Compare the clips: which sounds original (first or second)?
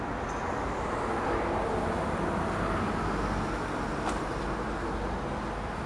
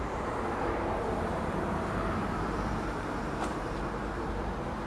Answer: first